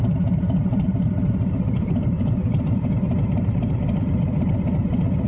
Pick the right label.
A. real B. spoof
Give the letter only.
B